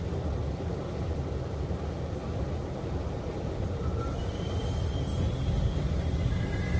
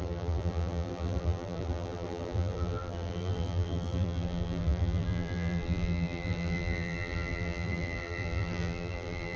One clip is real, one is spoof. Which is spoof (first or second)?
second